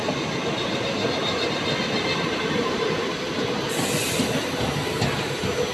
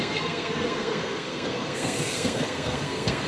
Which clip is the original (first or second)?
first